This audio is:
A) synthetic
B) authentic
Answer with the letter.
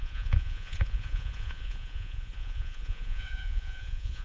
A